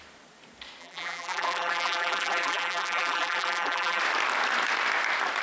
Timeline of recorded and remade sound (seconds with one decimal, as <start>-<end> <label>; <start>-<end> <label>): 0.0-0.8 recorded; 0.8-4.0 remade; 4.0-5.4 recorded